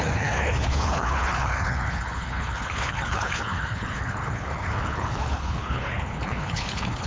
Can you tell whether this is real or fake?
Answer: fake